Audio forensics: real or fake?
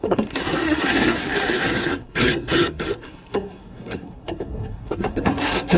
fake